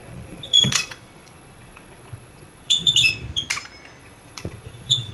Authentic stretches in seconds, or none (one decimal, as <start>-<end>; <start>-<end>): 3.1-4.0